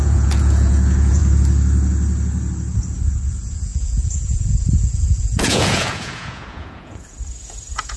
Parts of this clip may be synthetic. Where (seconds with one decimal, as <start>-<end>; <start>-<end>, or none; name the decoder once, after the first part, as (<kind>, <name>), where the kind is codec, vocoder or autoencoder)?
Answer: 0.0-1.2 (vocoder, Vocos); 3.3-8.0